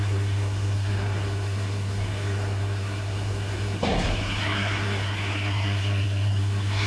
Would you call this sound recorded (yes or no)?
no